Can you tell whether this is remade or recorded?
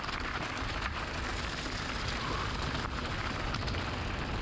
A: recorded